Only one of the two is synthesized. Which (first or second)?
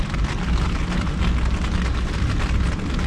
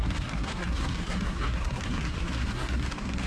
second